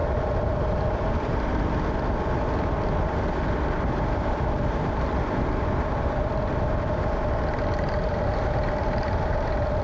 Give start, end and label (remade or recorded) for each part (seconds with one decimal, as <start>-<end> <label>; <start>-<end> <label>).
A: 0.0-9.8 recorded